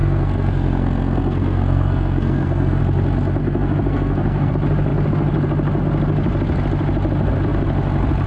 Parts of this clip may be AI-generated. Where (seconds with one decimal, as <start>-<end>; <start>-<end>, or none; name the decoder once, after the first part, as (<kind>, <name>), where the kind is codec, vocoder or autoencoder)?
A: 0.0-2.8 (codec, SNAC); 3.4-4.5